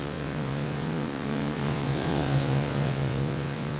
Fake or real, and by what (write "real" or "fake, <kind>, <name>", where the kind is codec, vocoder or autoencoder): fake, vocoder, WaveNeXt